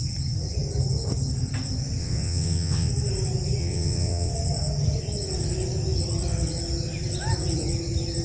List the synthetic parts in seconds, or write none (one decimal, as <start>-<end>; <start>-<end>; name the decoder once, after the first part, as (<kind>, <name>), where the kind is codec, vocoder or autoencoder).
2.0-2.9 (vocoder, WaveNeXt); 3.6-4.3

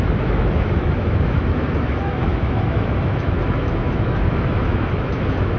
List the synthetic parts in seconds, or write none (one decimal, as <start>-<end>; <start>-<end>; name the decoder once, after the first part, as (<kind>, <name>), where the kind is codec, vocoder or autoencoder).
0.0-5.6 (autoencoder, DAC-VAE)

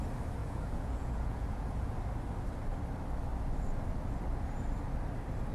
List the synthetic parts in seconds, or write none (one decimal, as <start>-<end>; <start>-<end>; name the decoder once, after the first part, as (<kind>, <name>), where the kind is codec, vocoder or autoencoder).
0.4-1.9 (vocoder, Vocos)

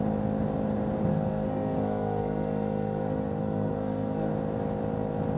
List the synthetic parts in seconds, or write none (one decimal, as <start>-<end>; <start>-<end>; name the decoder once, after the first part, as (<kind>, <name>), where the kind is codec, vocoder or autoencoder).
1.1-4.3 (codec, SNAC)

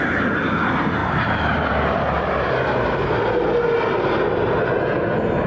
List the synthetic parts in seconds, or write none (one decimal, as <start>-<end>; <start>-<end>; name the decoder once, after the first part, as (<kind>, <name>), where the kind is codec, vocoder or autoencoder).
1.0-3.2 (vocoder, BigVGAN v2)